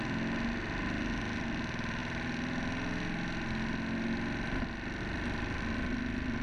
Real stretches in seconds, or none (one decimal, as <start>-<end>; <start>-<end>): 0.0-6.4